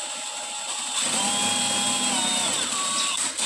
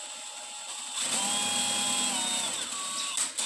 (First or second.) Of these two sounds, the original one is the second